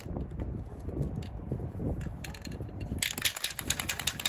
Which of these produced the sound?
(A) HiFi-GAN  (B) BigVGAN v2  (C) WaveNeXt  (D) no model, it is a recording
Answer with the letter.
D